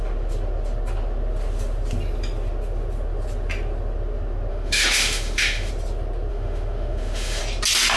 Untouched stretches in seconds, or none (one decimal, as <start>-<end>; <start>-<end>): 0.0-4.5; 5.7-6.3; 7.4-8.0